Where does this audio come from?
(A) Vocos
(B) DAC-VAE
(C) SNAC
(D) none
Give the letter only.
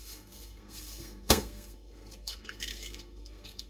C